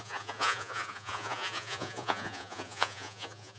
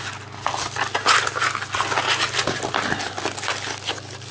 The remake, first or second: first